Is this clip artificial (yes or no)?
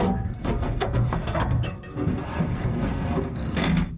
yes